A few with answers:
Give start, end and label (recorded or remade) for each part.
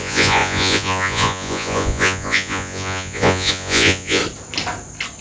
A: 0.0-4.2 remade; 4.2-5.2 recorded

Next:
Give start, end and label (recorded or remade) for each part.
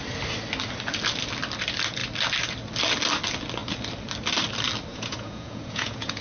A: 0.0-4.9 recorded; 4.9-6.2 remade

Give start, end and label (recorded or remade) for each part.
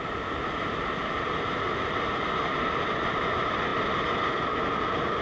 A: 0.0-5.2 recorded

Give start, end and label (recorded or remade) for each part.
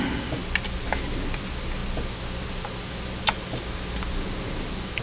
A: 0.0-5.0 recorded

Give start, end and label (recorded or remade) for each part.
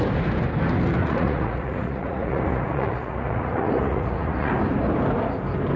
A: 0.0-1.0 recorded; 1.0-4.5 remade; 4.5-5.8 recorded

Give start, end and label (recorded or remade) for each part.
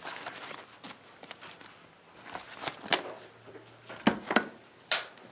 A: 0.0-5.3 recorded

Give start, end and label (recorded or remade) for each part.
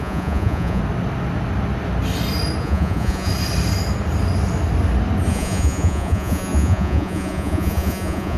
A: 0.0-0.8 remade; 0.8-2.6 recorded; 2.6-3.3 remade; 3.3-5.3 recorded; 5.3-8.4 remade